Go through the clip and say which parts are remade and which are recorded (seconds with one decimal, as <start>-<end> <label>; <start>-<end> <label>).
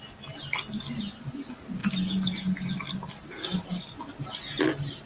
0.0-5.1 recorded